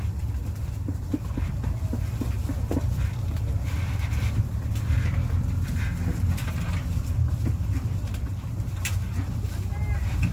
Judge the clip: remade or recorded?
remade